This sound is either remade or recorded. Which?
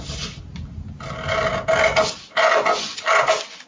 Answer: recorded